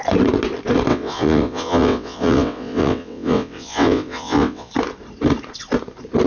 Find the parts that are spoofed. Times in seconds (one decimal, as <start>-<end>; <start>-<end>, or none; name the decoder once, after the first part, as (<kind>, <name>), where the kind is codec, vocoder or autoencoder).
0.9-4.7 (vocoder, WaveNeXt)